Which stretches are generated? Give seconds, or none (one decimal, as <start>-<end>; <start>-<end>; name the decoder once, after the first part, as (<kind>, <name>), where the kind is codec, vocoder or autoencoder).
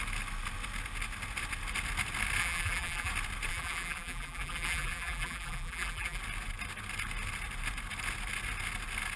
2.4-3.1 (vocoder, BigVGAN v2); 3.5-6.2